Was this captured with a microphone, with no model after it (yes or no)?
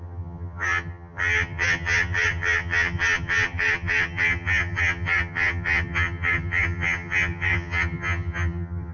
no